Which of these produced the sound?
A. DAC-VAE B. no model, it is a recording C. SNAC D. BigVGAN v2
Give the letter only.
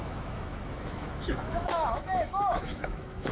A